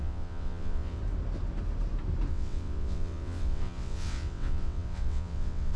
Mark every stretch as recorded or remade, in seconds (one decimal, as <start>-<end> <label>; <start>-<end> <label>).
0.0-1.0 remade; 1.0-2.3 recorded; 2.3-5.8 remade